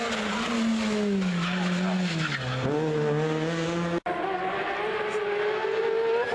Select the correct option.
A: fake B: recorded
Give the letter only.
B